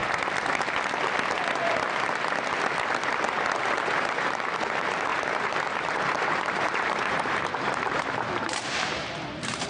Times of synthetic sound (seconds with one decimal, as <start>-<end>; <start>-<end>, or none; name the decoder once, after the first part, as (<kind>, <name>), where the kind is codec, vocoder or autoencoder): 3.6-9.7 (vocoder, BigVGAN v2)